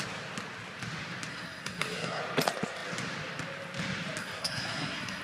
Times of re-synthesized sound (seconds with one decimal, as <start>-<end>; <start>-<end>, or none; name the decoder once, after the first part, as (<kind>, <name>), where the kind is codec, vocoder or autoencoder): 1.3-2.2 (codec, SNAC); 4.2-5.2